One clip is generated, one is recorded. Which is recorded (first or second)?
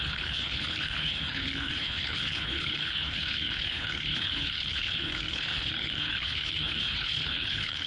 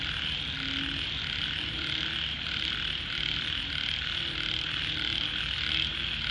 second